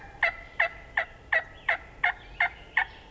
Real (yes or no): yes